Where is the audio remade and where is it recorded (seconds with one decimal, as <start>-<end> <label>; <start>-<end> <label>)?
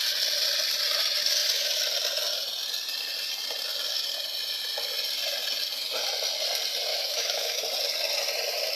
0.0-6.9 recorded; 6.9-7.6 remade; 7.6-8.8 recorded